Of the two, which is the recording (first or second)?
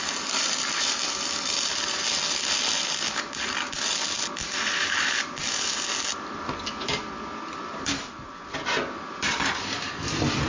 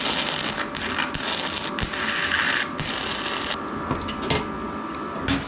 second